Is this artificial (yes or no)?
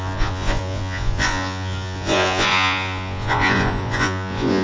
yes